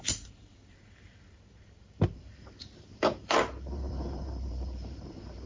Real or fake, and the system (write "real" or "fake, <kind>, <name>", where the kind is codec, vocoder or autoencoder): fake, vocoder, BigVGAN v2